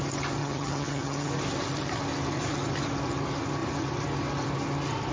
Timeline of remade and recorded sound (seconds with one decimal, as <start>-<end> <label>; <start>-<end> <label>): 0.0-0.4 recorded; 0.4-1.3 remade; 1.3-5.1 recorded